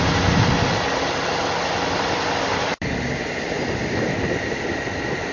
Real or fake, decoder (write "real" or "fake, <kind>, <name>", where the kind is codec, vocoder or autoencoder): real